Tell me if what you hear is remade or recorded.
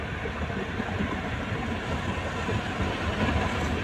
recorded